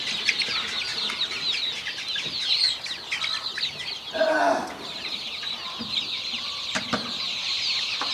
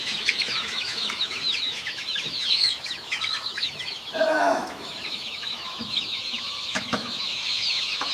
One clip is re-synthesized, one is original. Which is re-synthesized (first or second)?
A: second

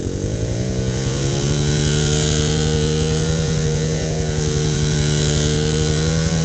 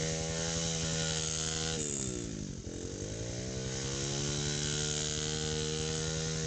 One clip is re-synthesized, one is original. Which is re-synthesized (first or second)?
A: first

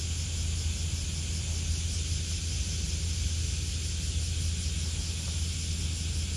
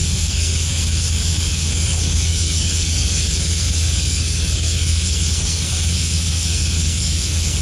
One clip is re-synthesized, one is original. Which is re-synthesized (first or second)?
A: second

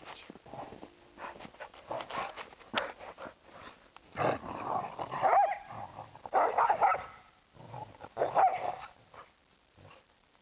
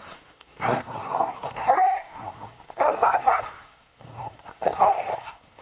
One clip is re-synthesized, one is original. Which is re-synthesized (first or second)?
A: second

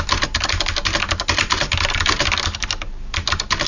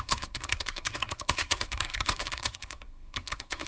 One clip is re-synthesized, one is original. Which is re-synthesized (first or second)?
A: second